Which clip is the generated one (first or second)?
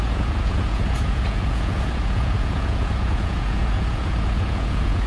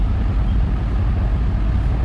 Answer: first